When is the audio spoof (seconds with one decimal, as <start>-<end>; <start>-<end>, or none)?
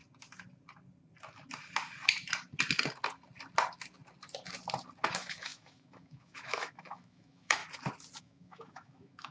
5.1-7.6; 8.2-9.3